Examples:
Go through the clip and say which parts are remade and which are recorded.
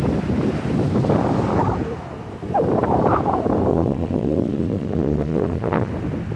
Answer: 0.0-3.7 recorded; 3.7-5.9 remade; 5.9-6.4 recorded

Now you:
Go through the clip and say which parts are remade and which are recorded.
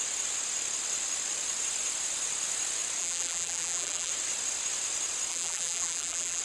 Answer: 0.0-3.0 recorded; 3.0-4.1 remade; 4.1-5.3 recorded; 5.3-6.4 remade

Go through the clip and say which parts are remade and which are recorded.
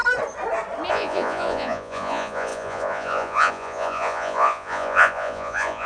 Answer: 0.0-0.9 recorded; 0.9-5.9 remade